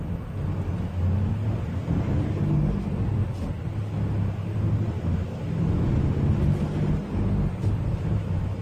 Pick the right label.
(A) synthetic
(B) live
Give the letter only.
B